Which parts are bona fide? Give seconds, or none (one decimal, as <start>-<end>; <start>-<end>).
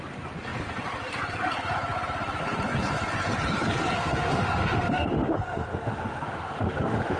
0.0-4.0